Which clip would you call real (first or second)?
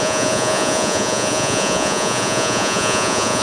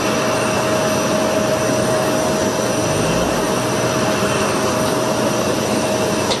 second